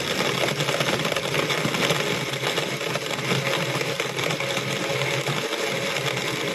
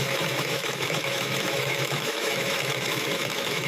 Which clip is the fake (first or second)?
second